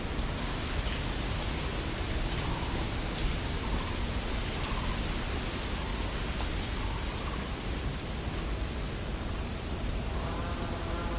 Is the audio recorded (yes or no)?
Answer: yes